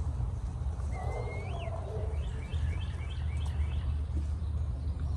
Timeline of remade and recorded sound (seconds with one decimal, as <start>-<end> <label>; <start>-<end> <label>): 0.0-5.2 recorded